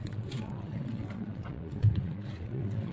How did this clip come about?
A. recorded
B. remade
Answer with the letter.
B